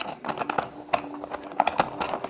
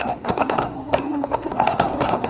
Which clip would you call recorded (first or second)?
first